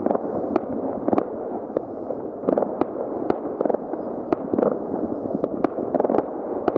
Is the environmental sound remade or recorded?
recorded